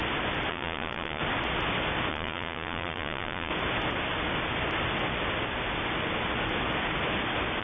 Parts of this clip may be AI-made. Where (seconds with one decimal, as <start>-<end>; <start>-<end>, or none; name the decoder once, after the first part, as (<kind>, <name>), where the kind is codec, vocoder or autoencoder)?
0.5-1.2 (vocoder, Vocos); 2.1-3.5